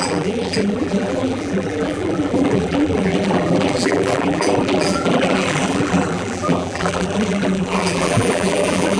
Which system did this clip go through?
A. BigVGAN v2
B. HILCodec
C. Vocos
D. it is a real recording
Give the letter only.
A